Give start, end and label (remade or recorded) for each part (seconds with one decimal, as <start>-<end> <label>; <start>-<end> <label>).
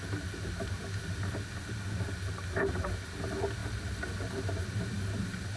0.0-5.6 recorded